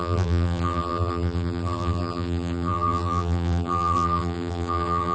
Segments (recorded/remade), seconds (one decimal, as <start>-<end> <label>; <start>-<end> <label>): 0.0-5.1 remade